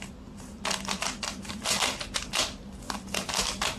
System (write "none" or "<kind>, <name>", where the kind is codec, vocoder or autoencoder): none